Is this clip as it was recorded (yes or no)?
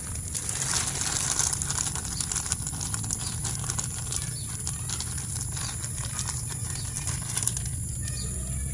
yes